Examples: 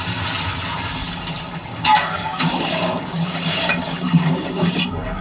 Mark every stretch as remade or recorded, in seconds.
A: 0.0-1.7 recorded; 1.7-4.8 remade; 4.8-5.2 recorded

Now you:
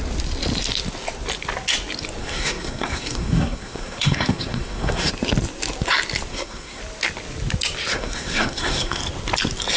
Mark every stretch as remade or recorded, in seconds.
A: 0.0-2.2 recorded; 2.2-5.1 remade; 5.1-6.3 recorded; 6.3-6.8 remade; 6.8-7.9 recorded; 7.9-9.0 remade; 9.0-9.8 recorded

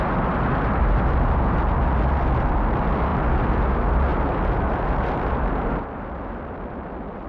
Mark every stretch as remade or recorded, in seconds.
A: 0.0-7.3 recorded

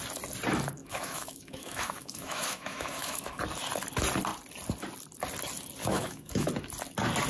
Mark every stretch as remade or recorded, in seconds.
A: 0.0-0.8 recorded; 0.8-3.4 remade; 3.4-5.8 recorded; 5.8-6.5 remade; 6.5-7.3 recorded

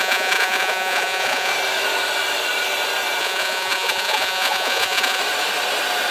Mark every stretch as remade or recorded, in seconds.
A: 0.0-1.5 remade; 1.5-3.2 recorded; 3.2-5.2 remade; 5.2-6.1 recorded

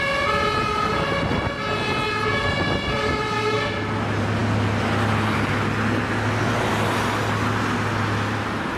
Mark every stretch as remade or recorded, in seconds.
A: 0.0-8.8 recorded

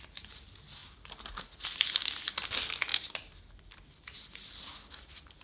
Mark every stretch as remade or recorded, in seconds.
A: 0.0-5.4 recorded

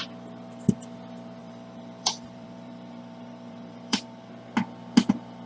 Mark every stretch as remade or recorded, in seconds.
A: 0.0-1.4 recorded; 1.4-4.3 remade; 4.3-5.5 recorded